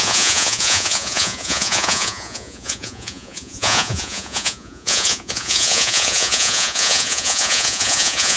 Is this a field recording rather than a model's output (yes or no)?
no